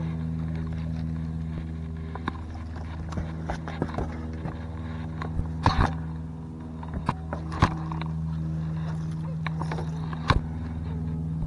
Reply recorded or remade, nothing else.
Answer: recorded